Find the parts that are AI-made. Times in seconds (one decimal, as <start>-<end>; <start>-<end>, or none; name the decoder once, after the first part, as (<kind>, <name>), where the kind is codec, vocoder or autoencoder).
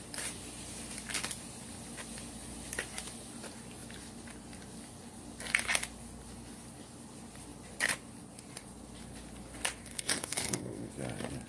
9.8-10.9 (codec, SNAC)